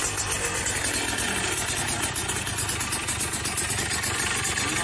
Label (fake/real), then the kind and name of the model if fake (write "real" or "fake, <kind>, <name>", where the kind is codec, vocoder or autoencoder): real